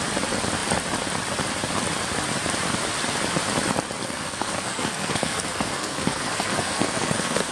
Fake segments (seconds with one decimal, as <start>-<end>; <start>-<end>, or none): 4.0-7.5